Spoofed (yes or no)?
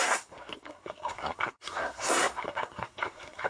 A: yes